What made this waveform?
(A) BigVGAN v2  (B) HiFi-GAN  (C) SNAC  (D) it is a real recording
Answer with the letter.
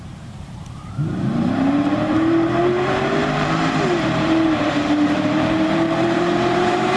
A